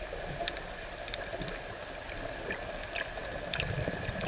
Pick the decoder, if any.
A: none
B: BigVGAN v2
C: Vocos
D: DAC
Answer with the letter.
A